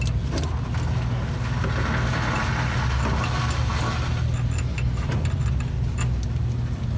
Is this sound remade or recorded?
recorded